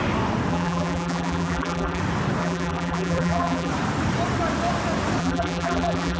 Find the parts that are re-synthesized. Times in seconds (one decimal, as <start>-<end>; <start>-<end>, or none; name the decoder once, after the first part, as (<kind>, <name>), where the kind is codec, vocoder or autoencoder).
0.5-2.0 (vocoder, BigVGAN v2); 2.4-3.7; 5.2-6.2